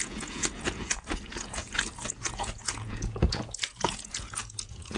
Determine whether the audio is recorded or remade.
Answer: remade